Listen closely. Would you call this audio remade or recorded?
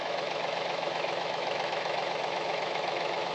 remade